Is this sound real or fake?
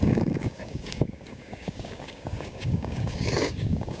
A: fake